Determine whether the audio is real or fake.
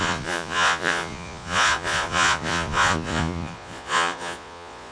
fake